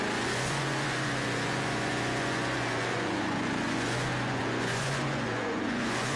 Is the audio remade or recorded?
remade